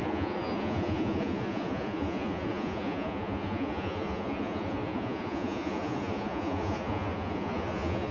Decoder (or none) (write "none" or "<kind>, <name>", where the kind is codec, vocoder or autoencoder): vocoder, Vocos